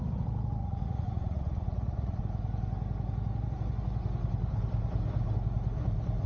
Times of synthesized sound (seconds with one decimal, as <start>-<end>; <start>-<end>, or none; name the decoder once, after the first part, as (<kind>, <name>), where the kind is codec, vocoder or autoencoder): 0.6-2.2 (vocoder, Vocos)